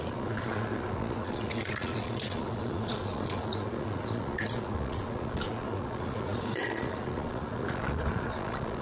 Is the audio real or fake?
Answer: fake